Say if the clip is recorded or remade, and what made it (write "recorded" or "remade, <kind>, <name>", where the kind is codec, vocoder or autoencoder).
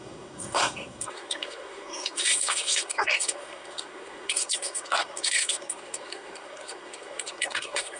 remade, codec, SNAC